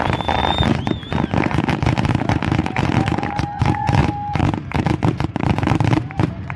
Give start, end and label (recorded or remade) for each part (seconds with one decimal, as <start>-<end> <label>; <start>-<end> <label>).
0.0-0.4 remade; 0.4-1.7 recorded; 1.7-6.6 remade